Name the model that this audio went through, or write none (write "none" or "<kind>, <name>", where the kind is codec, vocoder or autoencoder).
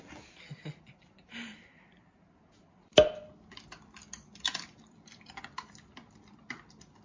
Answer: none